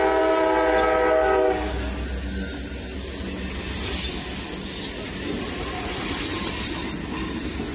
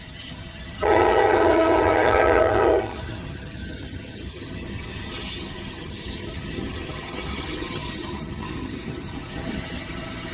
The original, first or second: first